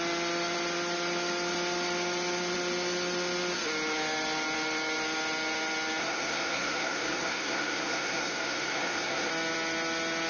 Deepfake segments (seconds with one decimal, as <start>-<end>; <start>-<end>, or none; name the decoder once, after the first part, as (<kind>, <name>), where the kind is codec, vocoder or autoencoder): 6.0-9.3 (codec, SNAC)